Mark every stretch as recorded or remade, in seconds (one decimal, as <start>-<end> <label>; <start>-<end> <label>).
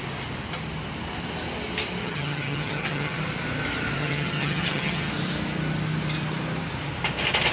0.0-2.0 recorded; 2.0-3.2 remade; 3.2-4.0 recorded; 4.0-5.1 remade; 5.1-7.5 recorded